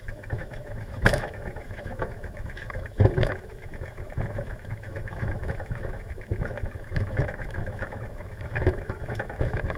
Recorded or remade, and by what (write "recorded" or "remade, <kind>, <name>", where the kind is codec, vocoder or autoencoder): remade, autoencoder, DAC-VAE